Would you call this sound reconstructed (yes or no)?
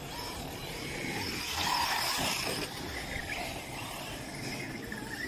no